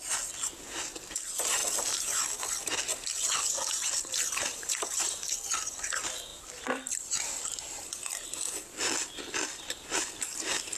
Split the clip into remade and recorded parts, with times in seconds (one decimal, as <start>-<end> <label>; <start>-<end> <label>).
0.0-6.3 recorded; 6.3-10.2 remade; 10.2-10.8 recorded